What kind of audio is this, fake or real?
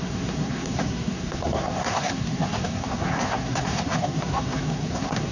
fake